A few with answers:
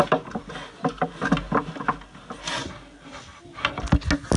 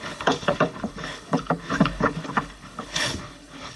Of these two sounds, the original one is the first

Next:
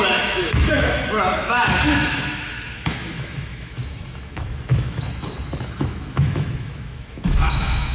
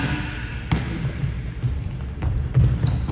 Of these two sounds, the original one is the second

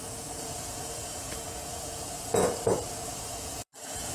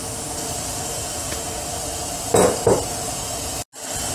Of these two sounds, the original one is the second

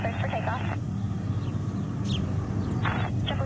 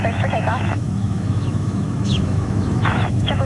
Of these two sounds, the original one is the first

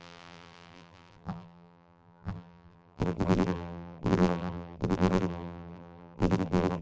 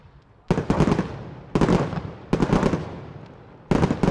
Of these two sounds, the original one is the second